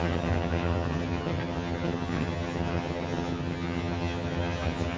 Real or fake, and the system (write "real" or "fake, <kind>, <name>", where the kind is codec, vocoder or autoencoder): fake, vocoder, HiFi-GAN